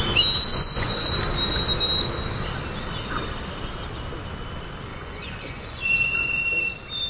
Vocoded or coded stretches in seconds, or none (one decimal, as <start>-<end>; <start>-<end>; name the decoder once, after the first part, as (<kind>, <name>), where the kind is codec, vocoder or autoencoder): 0.5-1.1 (vocoder, Vocos); 4.9-6.4